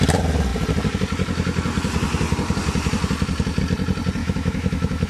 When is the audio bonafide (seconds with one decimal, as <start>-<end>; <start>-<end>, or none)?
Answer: 0.0-4.2